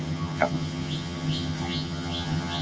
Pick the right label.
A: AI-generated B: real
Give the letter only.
A